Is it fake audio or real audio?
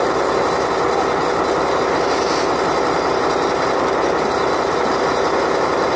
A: real